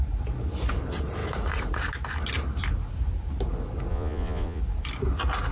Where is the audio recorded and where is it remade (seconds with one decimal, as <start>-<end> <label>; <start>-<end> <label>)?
0.0-3.9 recorded; 3.9-4.6 remade; 4.6-5.5 recorded